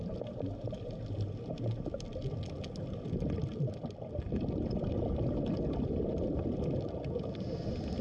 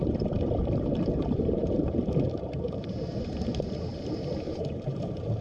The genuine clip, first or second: first